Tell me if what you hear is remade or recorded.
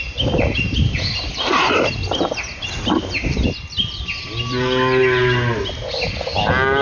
recorded